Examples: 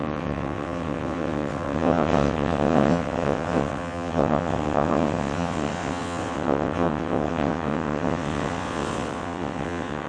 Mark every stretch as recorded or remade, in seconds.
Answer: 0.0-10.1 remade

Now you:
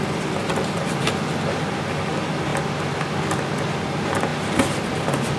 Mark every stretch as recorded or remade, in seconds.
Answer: 0.0-0.4 recorded; 0.4-1.1 remade; 1.1-5.4 recorded

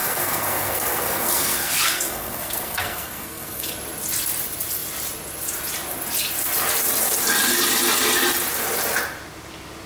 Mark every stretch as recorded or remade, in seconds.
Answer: 0.0-3.7 remade; 3.7-9.9 recorded

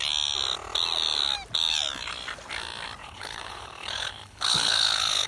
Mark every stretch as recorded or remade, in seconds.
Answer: 0.0-3.0 recorded; 3.0-5.3 remade